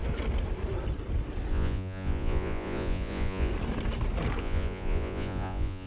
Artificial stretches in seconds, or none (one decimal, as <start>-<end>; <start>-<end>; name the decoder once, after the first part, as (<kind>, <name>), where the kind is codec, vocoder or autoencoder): 1.5-3.5 (vocoder, Vocos); 4.4-5.9